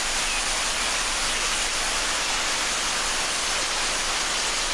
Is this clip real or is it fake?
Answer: real